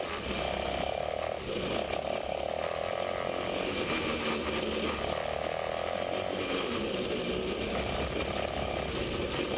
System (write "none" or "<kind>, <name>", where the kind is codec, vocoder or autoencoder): none